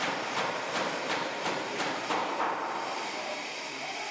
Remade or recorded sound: remade